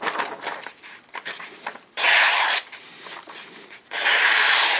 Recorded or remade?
remade